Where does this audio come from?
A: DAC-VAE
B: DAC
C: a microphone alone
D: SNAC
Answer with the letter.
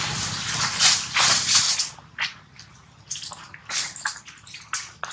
C